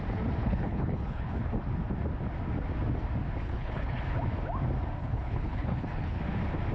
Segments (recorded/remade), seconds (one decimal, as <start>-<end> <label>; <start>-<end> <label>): 0.0-0.4 recorded; 0.4-1.4 remade; 1.4-3.4 recorded; 3.4-4.0 remade; 4.0-5.0 recorded; 5.0-6.2 remade; 6.2-6.7 recorded